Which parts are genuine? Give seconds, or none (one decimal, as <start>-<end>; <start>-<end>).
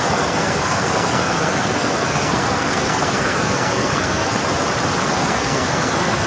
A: 4.4-5.0